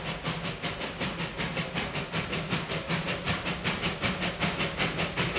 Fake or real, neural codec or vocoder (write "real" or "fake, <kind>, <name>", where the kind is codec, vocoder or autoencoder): real